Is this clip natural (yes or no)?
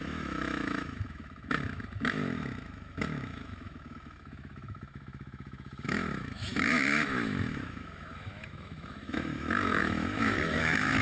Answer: no